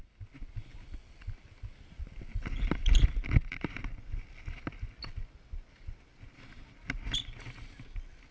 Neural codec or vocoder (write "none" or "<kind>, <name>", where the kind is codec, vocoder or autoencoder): none